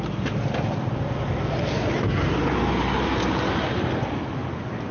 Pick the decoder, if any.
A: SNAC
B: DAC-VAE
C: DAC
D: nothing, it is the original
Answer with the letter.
D